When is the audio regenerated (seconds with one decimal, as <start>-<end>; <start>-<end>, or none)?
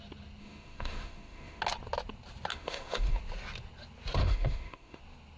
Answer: 0.4-1.6; 2.5-3.2; 4.2-5.0